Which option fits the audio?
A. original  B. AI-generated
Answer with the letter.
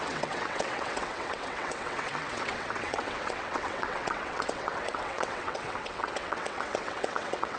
B